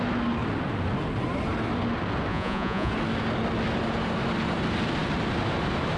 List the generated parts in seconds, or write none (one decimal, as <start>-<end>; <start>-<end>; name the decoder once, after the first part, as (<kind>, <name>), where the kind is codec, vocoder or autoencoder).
2.3-2.9 (vocoder, Vocos)